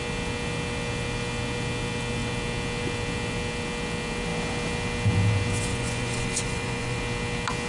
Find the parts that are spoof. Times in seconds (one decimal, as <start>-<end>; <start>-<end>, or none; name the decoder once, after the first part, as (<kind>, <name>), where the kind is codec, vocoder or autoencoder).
5.7-7.0 (vocoder, Vocos)